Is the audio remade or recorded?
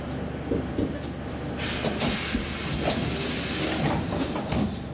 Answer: recorded